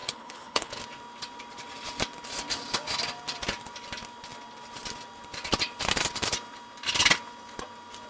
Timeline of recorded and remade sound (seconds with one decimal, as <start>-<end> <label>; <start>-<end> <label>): 0.0-0.8 remade; 0.8-8.1 recorded